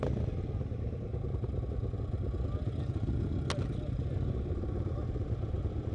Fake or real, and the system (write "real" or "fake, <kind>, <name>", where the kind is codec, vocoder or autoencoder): real